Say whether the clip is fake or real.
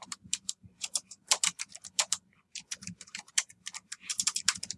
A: fake